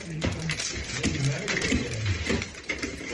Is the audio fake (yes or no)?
yes